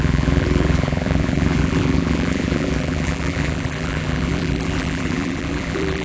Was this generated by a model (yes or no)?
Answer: yes